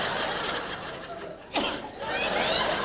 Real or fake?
real